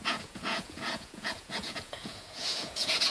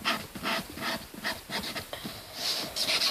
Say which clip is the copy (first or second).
first